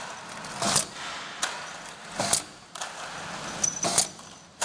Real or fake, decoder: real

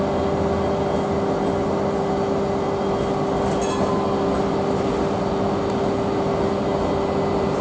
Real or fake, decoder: real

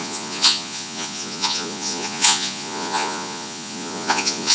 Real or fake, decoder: fake, vocoder, Vocos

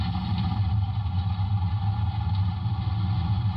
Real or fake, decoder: real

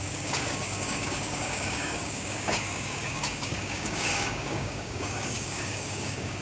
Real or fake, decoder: fake, codec, DAC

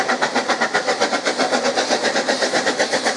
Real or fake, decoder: real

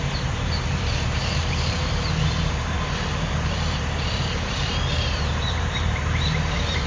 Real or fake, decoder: fake, vocoder, BigVGAN v2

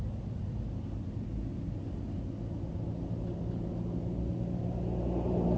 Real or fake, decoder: real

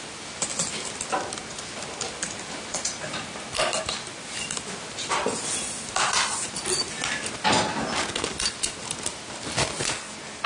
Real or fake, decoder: real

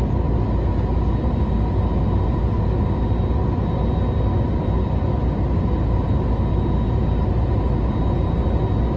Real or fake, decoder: real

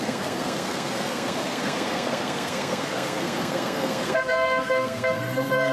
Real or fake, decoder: fake, codec, SNAC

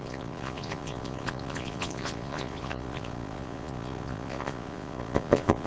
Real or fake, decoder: fake, vocoder, Vocos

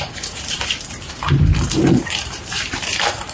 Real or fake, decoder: fake, vocoder, BigVGAN v2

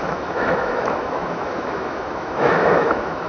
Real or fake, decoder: fake, autoencoder, DAC-VAE